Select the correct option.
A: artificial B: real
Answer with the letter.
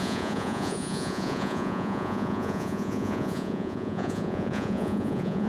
A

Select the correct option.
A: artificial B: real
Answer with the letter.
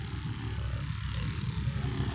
B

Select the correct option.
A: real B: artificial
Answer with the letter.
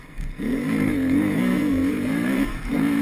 B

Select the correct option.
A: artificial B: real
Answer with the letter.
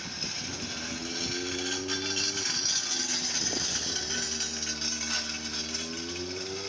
B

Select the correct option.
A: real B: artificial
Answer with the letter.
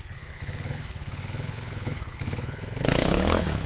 B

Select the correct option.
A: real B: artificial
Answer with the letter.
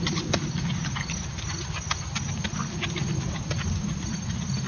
A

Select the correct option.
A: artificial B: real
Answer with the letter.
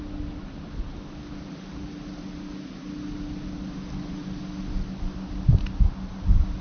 B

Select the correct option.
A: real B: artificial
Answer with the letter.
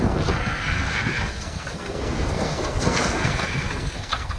B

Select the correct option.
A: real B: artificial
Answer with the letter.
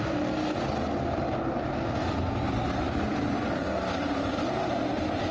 A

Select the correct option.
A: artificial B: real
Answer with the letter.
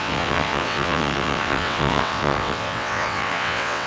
A